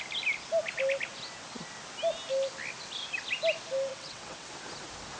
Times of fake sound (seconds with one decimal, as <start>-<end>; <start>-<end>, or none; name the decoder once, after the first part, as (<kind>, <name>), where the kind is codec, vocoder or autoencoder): 3.9-4.5 (vocoder, WaveNeXt)